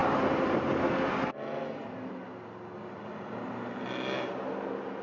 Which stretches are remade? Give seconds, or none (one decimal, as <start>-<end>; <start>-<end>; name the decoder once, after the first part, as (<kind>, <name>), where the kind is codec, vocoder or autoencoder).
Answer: none